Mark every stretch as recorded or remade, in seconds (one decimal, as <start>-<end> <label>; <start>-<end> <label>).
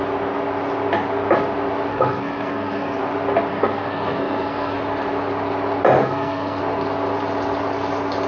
0.0-1.9 recorded; 1.9-3.0 remade; 3.0-3.5 recorded; 3.5-4.8 remade; 4.8-6.0 recorded; 6.0-6.6 remade; 6.6-8.3 recorded